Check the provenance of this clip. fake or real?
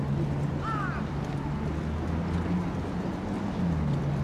real